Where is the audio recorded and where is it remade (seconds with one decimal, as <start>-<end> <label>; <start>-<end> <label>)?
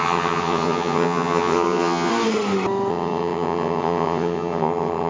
0.0-2.1 remade; 2.1-2.9 recorded; 2.9-5.1 remade